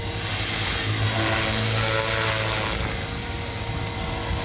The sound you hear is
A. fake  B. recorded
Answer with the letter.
B